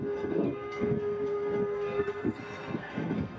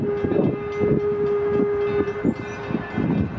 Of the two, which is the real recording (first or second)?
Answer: second